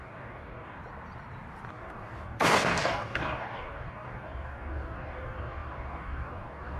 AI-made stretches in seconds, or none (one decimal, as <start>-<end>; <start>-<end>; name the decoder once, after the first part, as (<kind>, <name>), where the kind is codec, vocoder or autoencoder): 0.0-0.8 (codec, DAC); 1.7-6.8